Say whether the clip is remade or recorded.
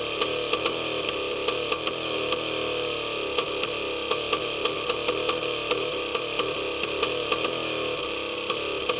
recorded